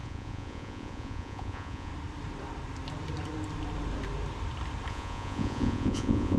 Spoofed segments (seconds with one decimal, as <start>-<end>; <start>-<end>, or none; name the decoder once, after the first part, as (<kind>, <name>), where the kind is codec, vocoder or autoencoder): 0.0-1.9 (vocoder, Vocos); 4.9-6.4